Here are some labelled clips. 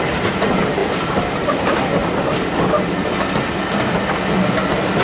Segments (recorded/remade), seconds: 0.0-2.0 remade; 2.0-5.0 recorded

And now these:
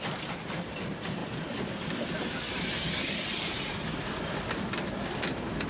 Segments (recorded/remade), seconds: 0.0-5.7 recorded

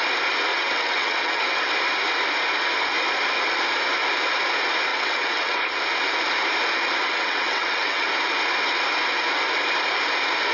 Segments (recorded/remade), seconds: 0.0-0.5 recorded; 0.5-1.7 remade; 1.7-4.9 recorded; 4.9-5.6 remade; 5.6-7.0 recorded; 7.0-8.1 remade; 8.1-10.5 recorded

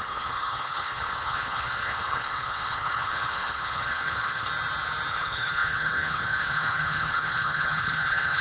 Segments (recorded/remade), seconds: 0.0-4.5 remade; 4.5-5.1 recorded; 5.1-8.4 remade

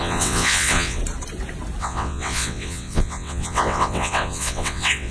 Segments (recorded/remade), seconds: 0.0-1.0 remade; 1.0-1.8 recorded; 1.8-5.1 remade